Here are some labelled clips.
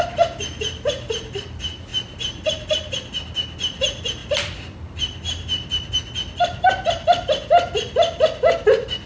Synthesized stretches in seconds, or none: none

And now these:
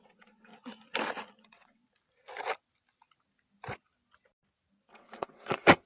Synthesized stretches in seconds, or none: 0.0-0.5; 1.4-1.8; 4.9-5.9

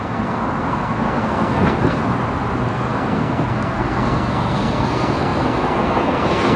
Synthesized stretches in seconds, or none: 0.0-2.0; 2.7-6.6

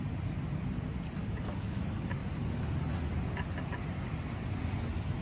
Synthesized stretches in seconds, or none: 1.2-1.8